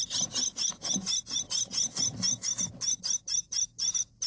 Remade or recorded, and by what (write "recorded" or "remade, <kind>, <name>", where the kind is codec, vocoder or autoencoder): recorded